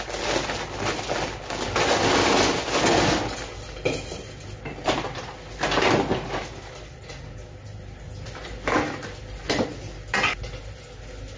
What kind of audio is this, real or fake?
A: real